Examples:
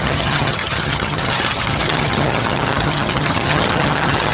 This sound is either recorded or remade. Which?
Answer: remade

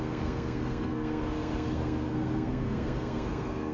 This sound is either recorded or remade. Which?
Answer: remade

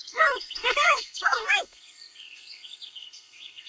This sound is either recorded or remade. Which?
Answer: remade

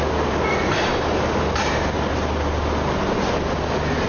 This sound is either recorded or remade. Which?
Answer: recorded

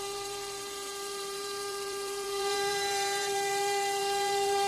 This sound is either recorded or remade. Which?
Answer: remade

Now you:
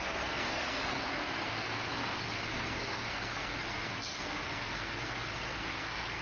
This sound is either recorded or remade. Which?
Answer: remade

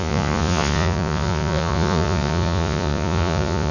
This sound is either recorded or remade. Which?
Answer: remade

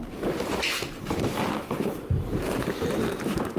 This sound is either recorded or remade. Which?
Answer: remade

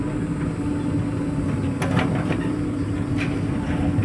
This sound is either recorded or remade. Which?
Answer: recorded